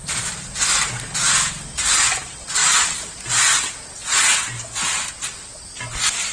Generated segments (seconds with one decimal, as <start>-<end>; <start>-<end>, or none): 0.0-0.6